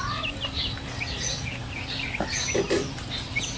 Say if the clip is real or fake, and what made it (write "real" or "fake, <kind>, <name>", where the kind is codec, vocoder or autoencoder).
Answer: real